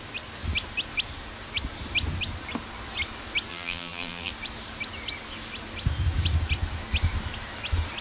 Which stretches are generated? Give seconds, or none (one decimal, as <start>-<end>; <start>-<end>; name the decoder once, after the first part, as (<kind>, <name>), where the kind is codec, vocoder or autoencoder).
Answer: 3.5-4.3 (vocoder, BigVGAN v2)